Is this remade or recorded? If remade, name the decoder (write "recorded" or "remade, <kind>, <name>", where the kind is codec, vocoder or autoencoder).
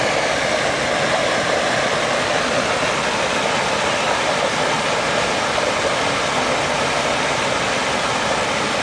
recorded